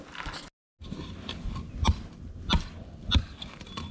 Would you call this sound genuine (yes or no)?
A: yes